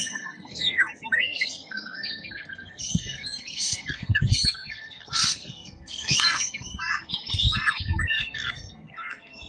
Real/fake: fake